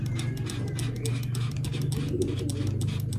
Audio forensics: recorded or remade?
recorded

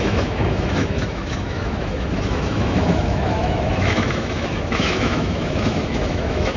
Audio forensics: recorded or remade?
remade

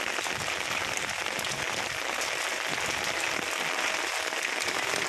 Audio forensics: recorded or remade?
recorded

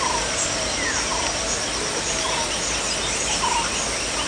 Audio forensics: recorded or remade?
recorded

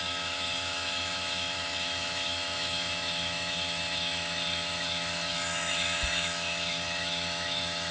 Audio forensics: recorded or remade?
remade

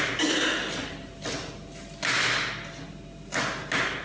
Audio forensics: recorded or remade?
recorded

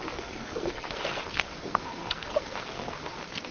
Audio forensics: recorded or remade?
remade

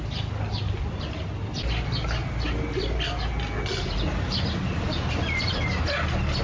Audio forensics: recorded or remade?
recorded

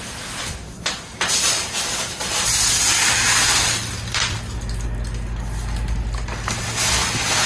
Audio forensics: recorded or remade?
recorded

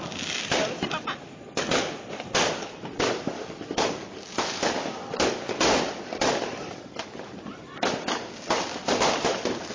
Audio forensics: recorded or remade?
recorded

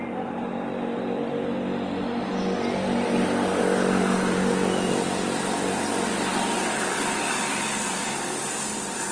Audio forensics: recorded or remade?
recorded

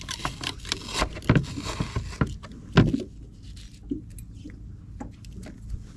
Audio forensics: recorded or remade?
recorded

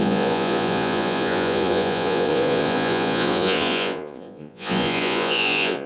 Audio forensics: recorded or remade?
remade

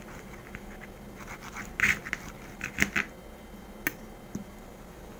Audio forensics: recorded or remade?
recorded